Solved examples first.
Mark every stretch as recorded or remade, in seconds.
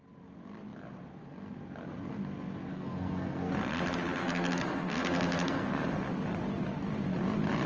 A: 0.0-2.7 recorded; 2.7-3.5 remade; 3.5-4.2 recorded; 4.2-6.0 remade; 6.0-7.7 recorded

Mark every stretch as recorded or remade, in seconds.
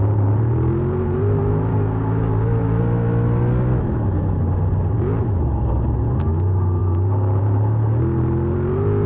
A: 0.0-1.7 recorded; 1.7-2.8 remade; 2.8-9.1 recorded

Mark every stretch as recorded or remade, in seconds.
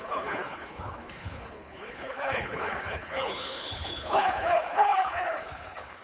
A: 0.0-6.0 remade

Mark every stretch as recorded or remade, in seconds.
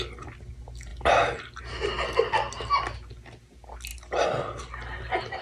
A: 0.0-5.4 recorded